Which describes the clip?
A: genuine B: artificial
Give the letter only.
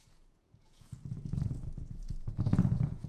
B